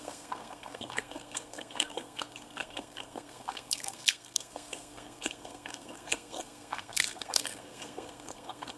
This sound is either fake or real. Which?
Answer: fake